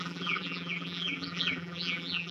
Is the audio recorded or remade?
remade